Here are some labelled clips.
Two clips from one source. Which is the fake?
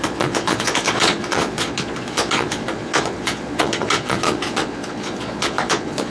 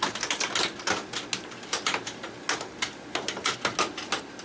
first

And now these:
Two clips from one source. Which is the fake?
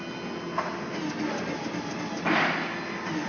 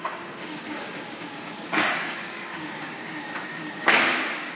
second